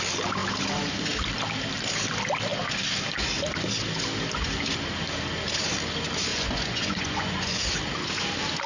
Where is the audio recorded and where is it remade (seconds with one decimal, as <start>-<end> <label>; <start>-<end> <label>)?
0.0-6.3 recorded; 6.3-7.6 remade; 7.6-8.7 recorded